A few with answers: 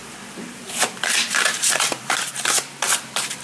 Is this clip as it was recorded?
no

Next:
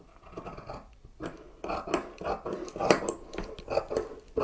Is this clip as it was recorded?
no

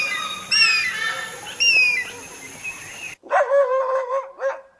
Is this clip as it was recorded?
no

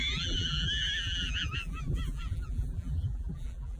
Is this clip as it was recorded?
no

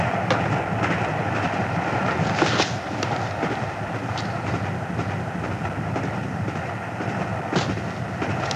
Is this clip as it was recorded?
yes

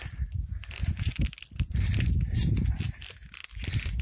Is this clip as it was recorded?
yes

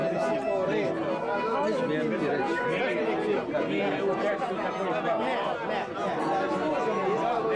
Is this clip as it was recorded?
yes